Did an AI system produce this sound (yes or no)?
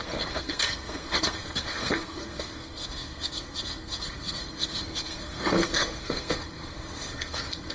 yes